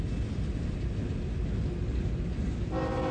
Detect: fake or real real